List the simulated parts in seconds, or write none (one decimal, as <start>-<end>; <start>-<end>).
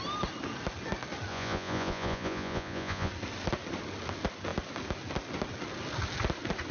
1.3-3.1